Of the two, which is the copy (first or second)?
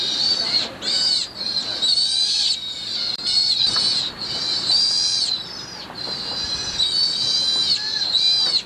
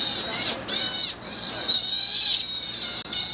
first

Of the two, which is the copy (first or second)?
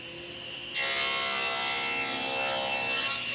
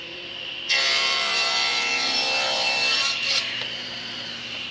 second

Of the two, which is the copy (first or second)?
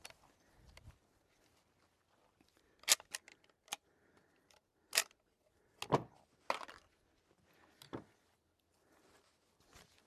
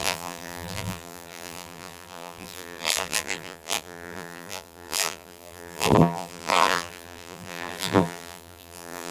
second